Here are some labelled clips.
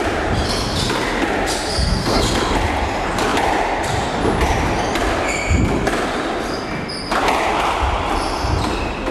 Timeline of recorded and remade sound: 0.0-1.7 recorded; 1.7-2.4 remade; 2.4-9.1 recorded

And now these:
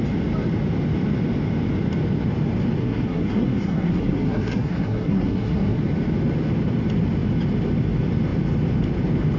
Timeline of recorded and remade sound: 0.0-2.8 recorded; 2.8-5.8 remade; 5.8-9.4 recorded

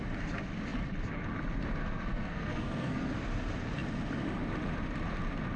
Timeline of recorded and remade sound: 0.0-1.8 recorded; 1.8-3.1 remade; 3.1-5.6 recorded